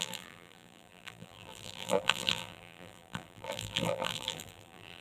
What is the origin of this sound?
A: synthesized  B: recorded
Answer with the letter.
A